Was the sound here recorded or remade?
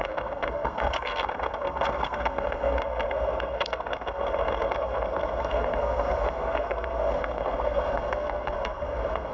remade